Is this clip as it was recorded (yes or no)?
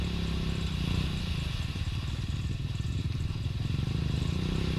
yes